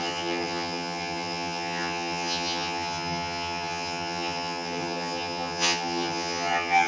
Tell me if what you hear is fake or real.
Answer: fake